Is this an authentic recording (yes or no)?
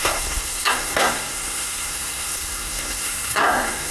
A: no